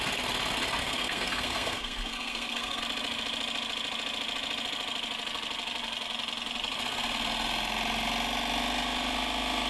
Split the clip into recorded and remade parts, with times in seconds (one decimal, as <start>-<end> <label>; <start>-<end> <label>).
0.0-0.8 recorded; 0.8-2.8 remade; 2.8-9.7 recorded